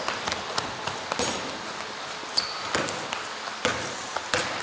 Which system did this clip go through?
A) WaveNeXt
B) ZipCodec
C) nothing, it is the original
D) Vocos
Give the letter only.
C